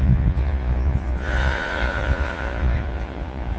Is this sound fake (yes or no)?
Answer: yes